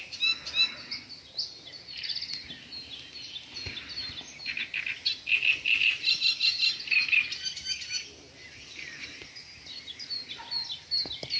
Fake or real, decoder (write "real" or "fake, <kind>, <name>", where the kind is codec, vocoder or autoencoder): real